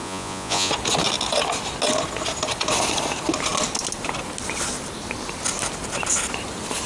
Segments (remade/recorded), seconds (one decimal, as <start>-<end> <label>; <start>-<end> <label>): 0.0-0.7 remade; 0.7-6.9 recorded